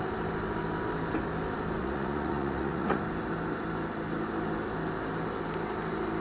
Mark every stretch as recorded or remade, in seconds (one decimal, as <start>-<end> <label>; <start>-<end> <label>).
0.0-1.8 recorded; 1.8-3.0 remade; 3.0-6.2 recorded